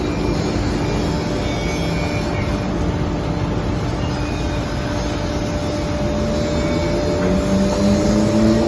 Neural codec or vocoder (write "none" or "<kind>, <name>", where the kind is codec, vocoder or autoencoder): none